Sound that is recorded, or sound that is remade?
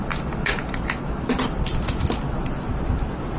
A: recorded